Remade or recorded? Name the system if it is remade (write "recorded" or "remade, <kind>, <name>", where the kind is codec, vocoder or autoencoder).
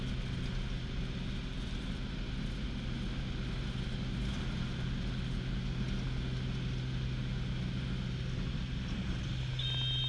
recorded